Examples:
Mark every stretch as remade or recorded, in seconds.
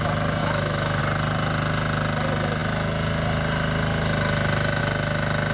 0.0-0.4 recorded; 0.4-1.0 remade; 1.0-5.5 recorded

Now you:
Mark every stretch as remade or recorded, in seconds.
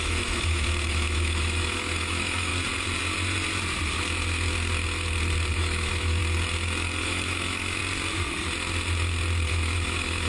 0.0-2.5 remade; 2.5-5.5 recorded; 5.5-6.2 remade; 6.2-7.0 recorded; 7.0-7.8 remade; 7.8-9.5 recorded; 9.5-10.3 remade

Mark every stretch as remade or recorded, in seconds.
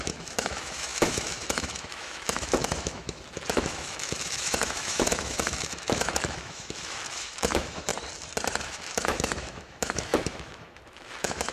0.0-7.9 remade; 7.9-8.6 recorded; 8.6-11.5 remade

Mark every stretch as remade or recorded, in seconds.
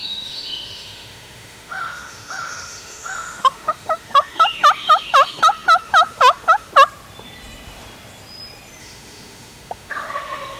0.0-6.7 remade; 6.7-8.8 recorded; 8.8-10.6 remade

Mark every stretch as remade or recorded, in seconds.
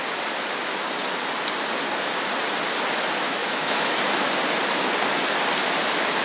0.0-3.4 recorded; 3.4-4.3 remade; 4.3-6.2 recorded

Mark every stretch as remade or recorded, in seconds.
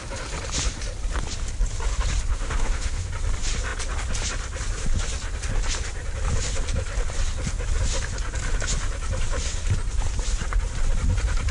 0.0-2.3 recorded; 2.3-3.1 remade; 3.1-11.5 recorded